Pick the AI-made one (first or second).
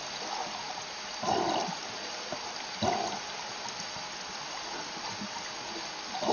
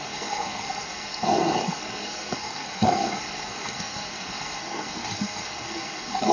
second